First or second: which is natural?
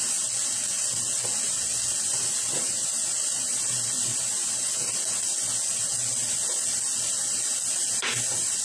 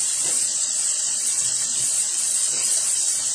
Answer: first